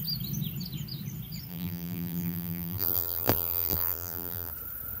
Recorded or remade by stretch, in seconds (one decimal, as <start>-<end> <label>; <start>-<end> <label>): 0.0-1.5 recorded; 1.5-4.5 remade; 4.5-5.0 recorded